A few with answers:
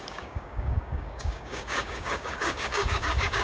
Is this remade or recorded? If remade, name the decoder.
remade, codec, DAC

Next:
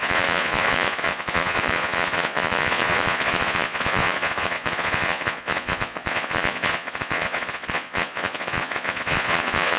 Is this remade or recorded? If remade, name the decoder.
remade, vocoder, Vocos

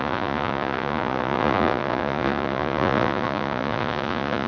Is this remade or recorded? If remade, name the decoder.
remade, vocoder, Vocos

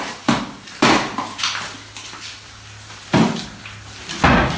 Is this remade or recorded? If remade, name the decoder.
recorded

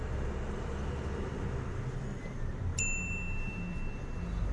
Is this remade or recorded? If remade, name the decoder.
recorded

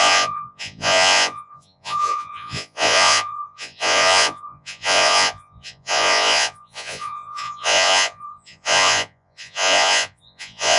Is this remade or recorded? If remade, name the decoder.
remade, vocoder, Vocos